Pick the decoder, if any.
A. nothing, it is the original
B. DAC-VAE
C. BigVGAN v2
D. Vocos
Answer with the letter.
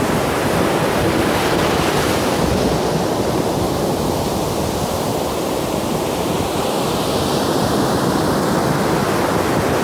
A